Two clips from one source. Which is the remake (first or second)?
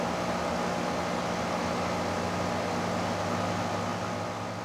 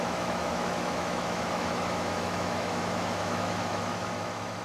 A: second